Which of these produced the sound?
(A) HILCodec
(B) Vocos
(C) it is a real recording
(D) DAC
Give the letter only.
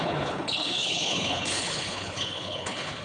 A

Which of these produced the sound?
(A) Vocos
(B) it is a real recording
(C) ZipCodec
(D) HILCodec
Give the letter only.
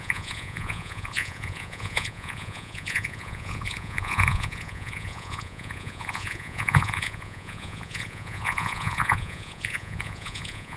A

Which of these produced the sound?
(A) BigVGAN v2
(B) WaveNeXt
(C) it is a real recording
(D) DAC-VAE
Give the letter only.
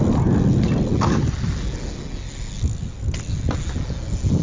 C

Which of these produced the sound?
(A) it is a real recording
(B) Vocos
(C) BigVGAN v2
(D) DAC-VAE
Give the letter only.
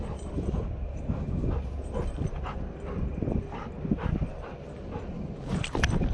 A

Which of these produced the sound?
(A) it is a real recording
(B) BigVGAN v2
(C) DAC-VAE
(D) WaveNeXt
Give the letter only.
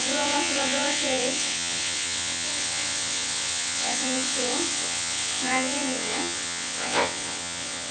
D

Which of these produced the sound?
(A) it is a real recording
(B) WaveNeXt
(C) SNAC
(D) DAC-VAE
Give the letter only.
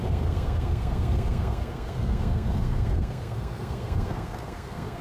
C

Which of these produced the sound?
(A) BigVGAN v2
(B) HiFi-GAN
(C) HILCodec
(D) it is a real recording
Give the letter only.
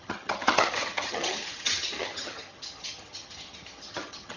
B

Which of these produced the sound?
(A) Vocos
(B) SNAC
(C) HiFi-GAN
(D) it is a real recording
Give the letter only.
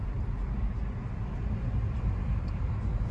D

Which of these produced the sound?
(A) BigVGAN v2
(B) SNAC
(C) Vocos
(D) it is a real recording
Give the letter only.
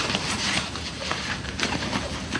A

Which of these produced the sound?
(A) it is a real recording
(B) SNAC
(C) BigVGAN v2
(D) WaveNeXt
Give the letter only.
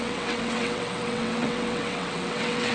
D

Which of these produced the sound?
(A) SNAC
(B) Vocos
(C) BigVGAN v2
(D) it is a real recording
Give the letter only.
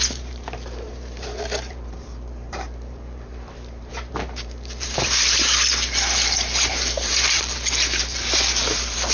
C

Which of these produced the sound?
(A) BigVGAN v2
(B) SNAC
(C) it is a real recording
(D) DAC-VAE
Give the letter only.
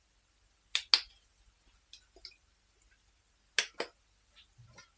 C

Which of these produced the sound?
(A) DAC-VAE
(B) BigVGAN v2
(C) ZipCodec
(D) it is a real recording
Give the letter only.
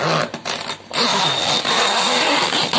D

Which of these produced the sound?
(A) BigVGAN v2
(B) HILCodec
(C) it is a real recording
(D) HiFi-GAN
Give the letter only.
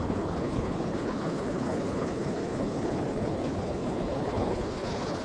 B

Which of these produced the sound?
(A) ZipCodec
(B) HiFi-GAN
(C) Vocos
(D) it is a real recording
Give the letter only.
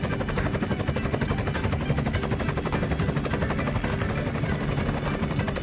D